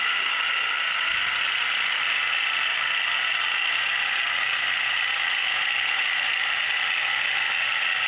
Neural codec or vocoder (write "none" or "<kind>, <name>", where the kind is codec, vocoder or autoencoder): none